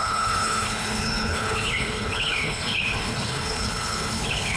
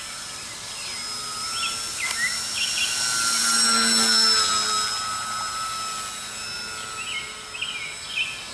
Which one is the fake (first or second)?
first